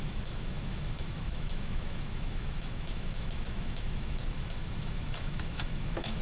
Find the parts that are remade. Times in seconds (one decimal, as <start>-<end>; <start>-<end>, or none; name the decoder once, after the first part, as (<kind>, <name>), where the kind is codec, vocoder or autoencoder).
0.0-6.2 (autoencoder, DAC-VAE)